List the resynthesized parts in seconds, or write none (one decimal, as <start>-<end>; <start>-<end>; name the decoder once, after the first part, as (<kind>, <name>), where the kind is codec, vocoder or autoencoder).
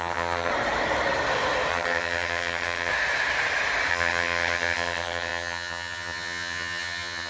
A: 0.0-0.5 (vocoder, HiFi-GAN); 1.7-2.9; 3.9-7.3